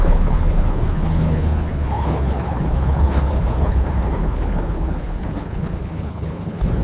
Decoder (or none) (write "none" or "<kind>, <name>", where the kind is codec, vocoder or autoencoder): codec, HILCodec